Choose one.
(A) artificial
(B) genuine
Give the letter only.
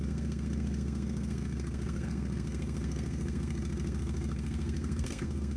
A